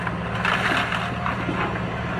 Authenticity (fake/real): real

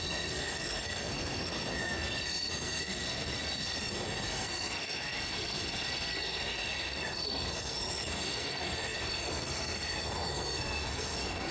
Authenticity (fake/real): fake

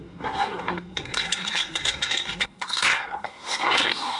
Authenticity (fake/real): fake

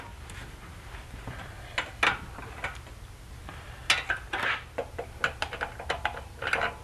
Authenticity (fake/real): real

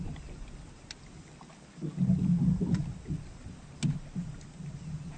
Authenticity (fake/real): real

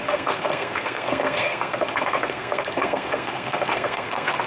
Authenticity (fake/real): fake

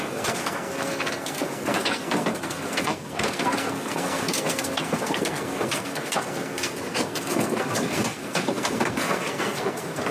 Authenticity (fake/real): fake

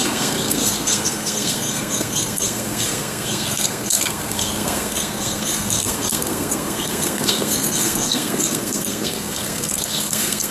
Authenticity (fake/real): fake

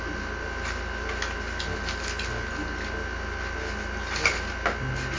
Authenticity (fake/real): real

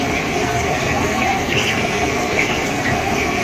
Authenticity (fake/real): fake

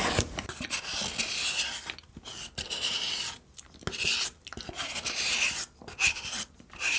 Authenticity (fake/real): real